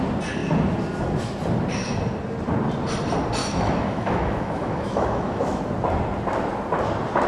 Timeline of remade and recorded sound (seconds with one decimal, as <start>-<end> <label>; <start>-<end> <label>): 0.0-3.4 recorded; 3.4-5.6 remade; 5.6-7.3 recorded